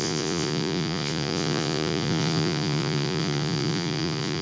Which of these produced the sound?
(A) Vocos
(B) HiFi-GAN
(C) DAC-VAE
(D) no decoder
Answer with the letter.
A